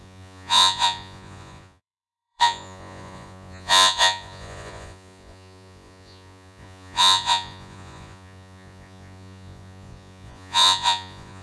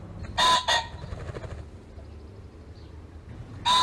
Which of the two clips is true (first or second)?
second